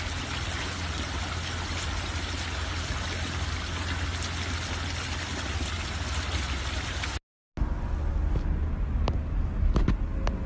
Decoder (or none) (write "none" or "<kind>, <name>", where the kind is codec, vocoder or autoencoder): none